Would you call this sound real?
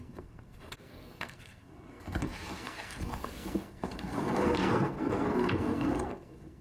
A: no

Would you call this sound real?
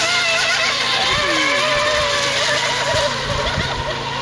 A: yes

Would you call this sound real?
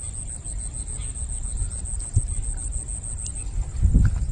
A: yes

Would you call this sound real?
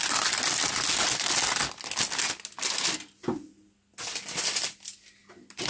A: yes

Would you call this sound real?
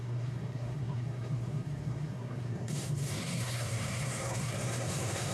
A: no